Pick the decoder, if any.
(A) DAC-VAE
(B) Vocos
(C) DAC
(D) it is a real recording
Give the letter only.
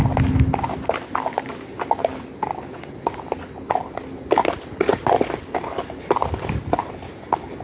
D